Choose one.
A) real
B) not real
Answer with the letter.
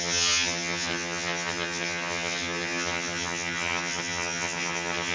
B